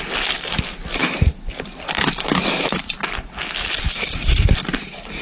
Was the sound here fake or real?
real